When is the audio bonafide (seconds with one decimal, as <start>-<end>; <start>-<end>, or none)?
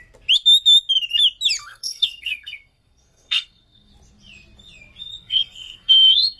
0.0-1.6; 3.9-5.0